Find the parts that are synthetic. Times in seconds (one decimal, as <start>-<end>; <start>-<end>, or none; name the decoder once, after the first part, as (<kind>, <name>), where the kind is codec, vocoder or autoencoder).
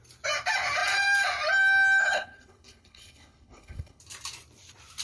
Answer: 2.0-4.0 (codec, HILCodec)